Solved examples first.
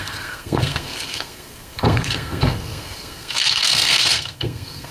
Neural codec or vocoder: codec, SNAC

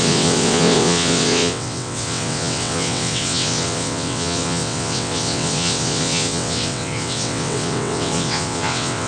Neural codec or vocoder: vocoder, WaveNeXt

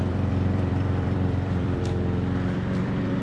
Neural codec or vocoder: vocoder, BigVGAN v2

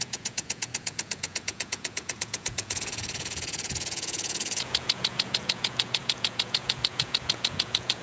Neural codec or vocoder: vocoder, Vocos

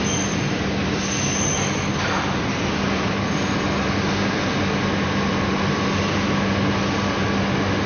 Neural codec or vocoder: none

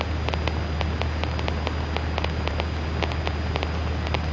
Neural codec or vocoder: none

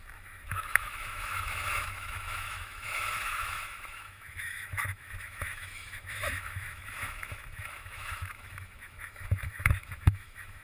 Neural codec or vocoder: autoencoder, DAC-VAE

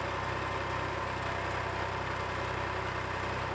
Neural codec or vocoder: none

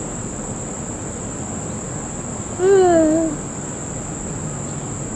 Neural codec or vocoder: none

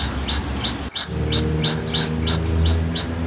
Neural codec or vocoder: none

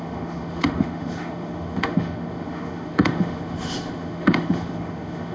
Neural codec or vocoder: autoencoder, DAC-VAE